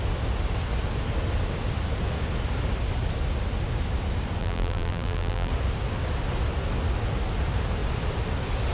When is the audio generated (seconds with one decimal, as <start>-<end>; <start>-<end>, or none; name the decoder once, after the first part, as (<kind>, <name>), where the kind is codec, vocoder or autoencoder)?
4.4-5.5 (vocoder, BigVGAN v2)